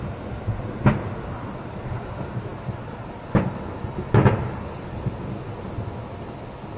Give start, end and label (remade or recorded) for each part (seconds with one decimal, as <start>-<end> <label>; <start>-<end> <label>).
0.0-6.8 recorded